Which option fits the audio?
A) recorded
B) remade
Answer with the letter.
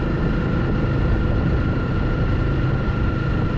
A